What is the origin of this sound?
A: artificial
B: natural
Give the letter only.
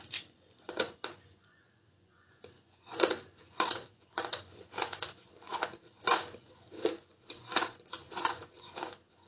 A